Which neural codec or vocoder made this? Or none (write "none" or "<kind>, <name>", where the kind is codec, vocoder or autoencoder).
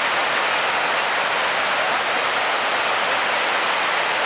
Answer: none